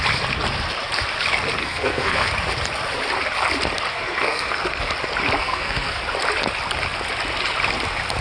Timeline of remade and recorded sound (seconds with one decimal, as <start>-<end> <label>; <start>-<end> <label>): 0.0-1.6 recorded; 1.6-2.3 remade; 2.3-3.9 recorded; 3.9-4.9 remade; 4.9-5.4 recorded; 5.4-6.0 remade; 6.0-8.2 recorded